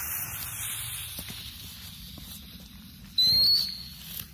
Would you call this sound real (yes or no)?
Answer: yes